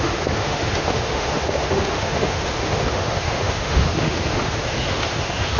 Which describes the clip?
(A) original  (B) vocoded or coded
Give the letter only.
B